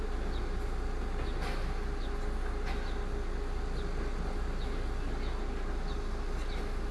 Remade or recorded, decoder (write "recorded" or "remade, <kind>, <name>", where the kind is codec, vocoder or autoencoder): recorded